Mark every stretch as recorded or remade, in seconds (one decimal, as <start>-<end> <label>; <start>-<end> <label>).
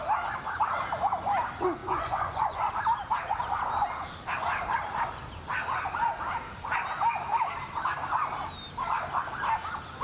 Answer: 0.0-1.8 recorded; 1.8-2.7 remade; 2.7-10.0 recorded